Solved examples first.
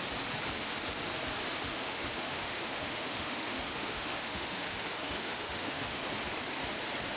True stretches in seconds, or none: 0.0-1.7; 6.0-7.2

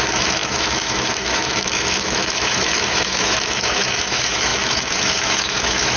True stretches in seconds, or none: none

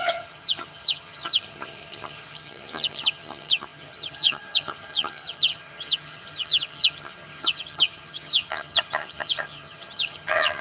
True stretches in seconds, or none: none

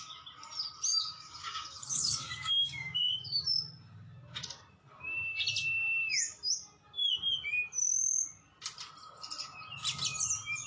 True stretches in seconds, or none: 0.0-0.9; 3.4-10.7

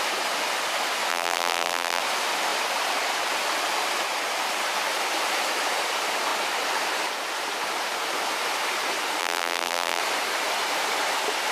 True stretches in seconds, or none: 0.0-1.1; 2.0-9.2; 10.0-11.5